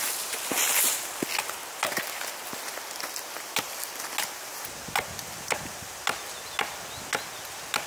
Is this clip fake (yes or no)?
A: no